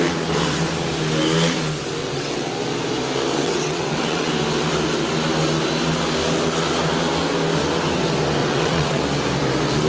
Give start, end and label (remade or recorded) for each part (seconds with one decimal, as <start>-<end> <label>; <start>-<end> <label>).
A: 0.0-2.0 recorded; 2.0-2.5 remade; 2.5-3.3 recorded; 3.3-4.3 remade; 4.3-8.4 recorded; 8.4-9.0 remade; 9.0-9.9 recorded